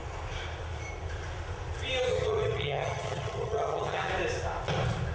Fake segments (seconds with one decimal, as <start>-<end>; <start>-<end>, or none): 2.1-4.1